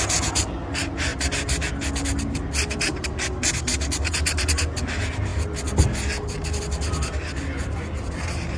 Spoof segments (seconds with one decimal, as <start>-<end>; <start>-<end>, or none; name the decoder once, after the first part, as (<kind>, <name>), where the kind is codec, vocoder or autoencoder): none